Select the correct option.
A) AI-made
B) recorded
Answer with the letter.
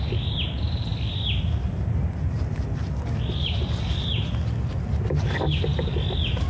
B